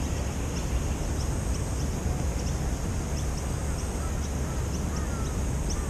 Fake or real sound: real